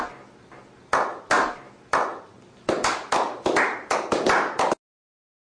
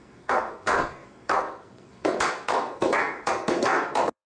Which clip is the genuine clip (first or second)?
first